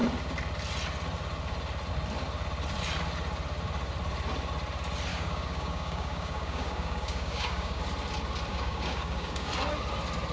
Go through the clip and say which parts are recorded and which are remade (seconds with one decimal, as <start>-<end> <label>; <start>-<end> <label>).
0.0-5.1 recorded; 5.1-7.8 remade; 7.8-8.5 recorded; 8.5-9.5 remade; 9.5-10.3 recorded